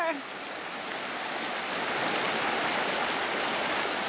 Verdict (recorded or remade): recorded